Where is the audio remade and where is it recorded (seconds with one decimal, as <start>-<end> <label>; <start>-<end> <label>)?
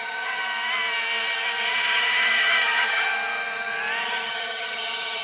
0.0-0.4 remade; 0.4-1.7 recorded; 1.7-3.1 remade; 3.1-4.0 recorded; 4.0-5.2 remade